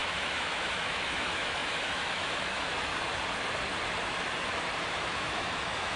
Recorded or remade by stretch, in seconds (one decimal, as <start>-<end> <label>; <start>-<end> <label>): 0.0-2.9 remade; 2.9-4.9 recorded; 4.9-6.0 remade